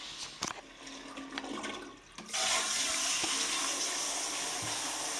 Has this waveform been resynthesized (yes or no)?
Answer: no